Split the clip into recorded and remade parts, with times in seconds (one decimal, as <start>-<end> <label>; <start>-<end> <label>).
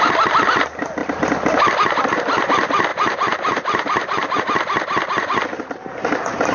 0.0-2.9 recorded; 2.9-4.4 remade; 4.4-5.5 recorded; 5.5-6.5 remade